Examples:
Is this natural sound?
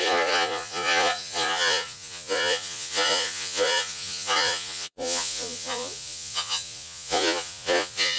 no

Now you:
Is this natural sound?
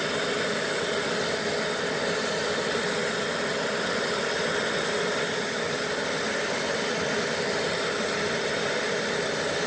yes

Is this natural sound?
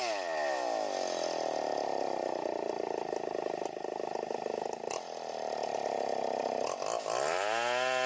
yes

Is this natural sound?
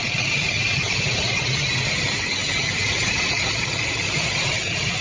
yes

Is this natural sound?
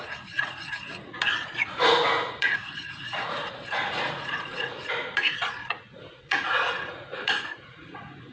no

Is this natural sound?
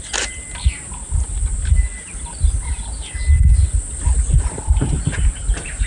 yes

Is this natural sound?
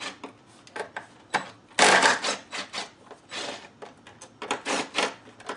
yes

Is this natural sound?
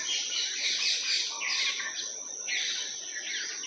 yes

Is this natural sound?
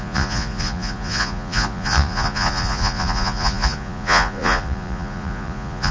no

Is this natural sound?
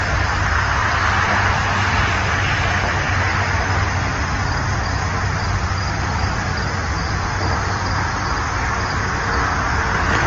yes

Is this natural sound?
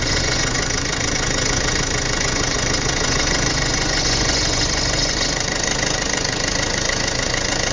no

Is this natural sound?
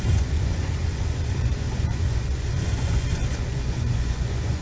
no